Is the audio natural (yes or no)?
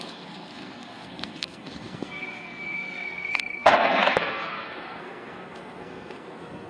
no